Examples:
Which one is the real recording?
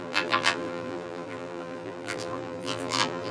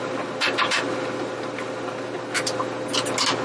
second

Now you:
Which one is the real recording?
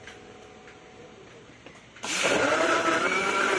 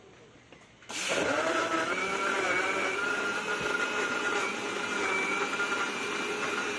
second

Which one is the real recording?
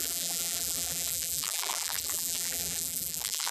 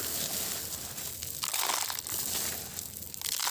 second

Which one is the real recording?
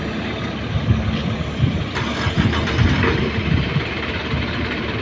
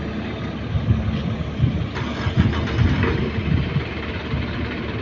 second